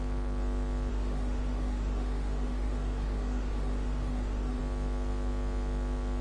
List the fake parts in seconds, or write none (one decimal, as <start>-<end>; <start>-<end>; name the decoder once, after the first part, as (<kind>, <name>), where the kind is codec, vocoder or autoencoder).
0.9-4.6 (autoencoder, DAC-VAE)